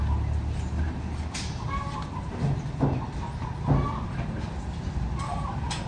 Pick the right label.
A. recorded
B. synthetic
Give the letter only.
A